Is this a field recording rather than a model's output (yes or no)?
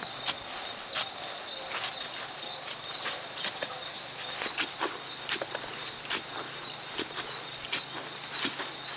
yes